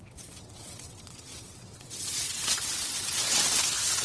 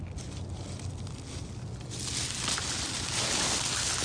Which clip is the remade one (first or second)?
first